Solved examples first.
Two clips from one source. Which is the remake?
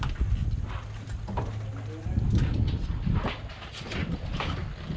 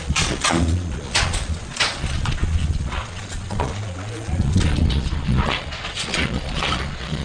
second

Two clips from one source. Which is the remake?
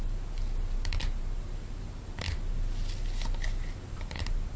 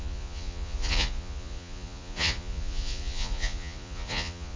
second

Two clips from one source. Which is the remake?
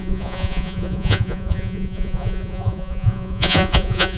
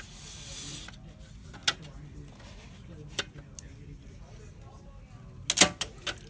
first